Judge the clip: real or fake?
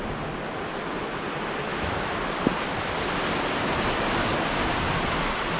real